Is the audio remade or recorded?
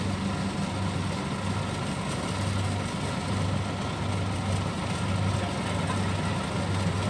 recorded